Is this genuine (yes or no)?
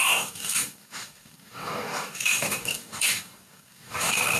no